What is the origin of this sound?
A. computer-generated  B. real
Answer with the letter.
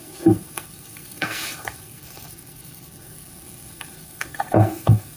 A